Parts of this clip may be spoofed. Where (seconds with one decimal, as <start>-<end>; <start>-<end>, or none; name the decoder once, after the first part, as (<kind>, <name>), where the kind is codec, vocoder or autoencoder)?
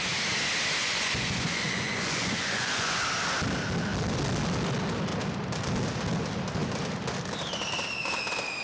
0.8-3.0 (vocoder, Vocos)